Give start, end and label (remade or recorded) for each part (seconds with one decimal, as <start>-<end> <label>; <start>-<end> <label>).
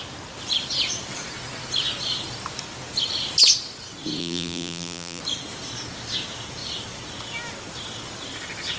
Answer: 0.0-4.2 recorded; 4.2-5.2 remade; 5.2-8.8 recorded